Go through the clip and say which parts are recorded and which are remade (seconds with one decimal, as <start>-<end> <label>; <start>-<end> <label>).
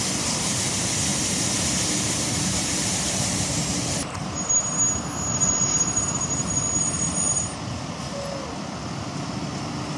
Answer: 0.0-1.1 recorded; 1.1-4.4 remade; 4.4-5.3 recorded; 5.3-7.4 remade; 7.4-10.0 recorded